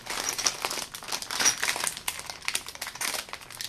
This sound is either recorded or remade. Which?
recorded